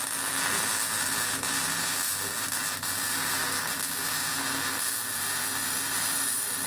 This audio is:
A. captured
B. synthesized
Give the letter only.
A